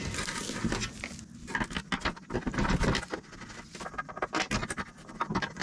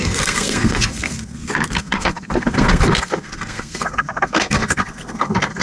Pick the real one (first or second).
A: first